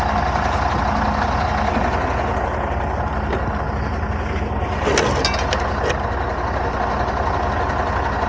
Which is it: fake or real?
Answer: real